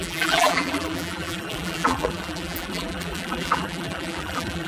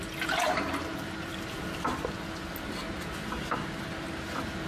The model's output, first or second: first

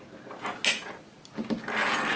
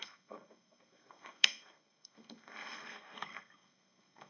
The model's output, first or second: second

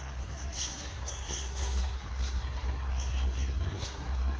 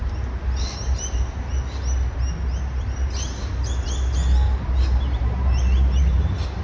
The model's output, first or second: first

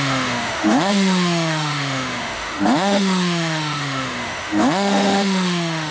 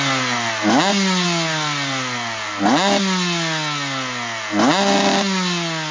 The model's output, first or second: first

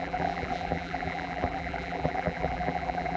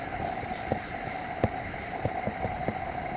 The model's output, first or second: first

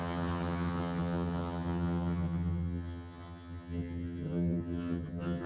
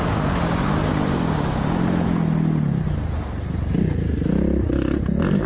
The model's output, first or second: first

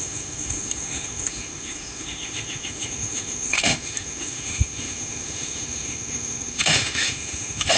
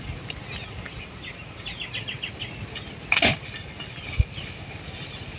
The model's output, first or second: first